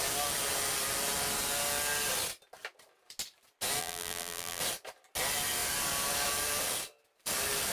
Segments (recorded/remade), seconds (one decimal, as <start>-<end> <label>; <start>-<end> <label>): 0.0-3.8 recorded; 3.8-4.6 remade; 4.6-7.7 recorded